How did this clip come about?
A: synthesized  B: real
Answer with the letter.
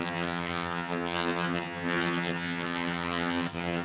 A